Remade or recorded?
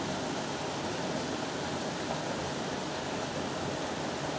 recorded